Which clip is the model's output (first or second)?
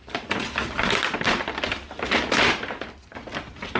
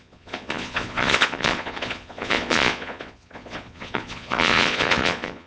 second